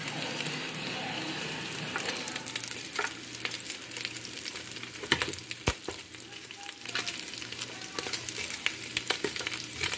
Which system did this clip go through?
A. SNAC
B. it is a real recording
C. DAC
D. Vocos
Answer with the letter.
B